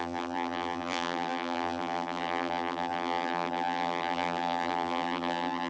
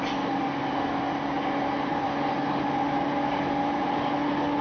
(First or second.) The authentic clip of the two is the second